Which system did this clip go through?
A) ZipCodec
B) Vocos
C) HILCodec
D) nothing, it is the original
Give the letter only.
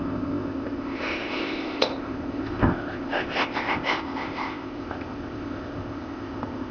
A